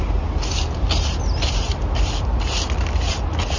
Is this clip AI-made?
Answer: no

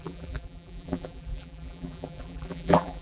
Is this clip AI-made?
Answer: yes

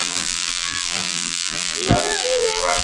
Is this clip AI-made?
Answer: yes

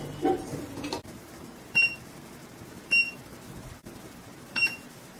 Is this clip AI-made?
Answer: yes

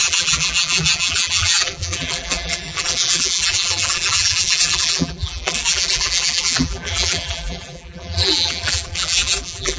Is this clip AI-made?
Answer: yes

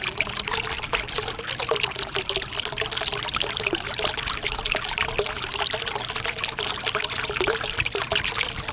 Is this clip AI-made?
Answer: no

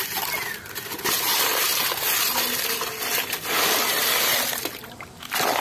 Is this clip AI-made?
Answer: no